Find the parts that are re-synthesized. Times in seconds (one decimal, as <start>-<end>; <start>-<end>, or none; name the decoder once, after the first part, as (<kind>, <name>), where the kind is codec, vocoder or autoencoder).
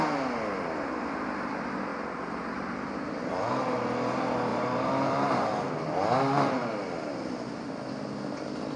4.5-5.7 (vocoder, BigVGAN v2)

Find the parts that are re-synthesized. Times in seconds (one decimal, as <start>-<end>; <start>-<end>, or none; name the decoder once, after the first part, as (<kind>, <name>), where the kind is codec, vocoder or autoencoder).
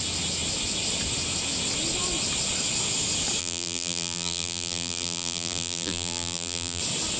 3.4-6.8 (vocoder, BigVGAN v2)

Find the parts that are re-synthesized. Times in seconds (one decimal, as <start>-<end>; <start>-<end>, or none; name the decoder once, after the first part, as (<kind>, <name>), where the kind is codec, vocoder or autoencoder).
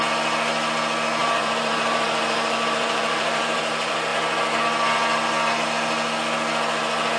1.2-3.6 (vocoder, BigVGAN v2)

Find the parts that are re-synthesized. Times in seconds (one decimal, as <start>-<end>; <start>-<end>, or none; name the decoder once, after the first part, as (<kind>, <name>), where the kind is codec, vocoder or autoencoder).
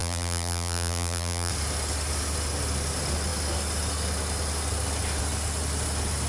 0.0-1.5 (vocoder, BigVGAN v2)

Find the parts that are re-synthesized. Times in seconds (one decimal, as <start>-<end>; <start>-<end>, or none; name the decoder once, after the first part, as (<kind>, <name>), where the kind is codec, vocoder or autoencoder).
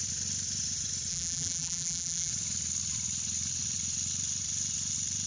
1.1-2.3 (vocoder, BigVGAN v2)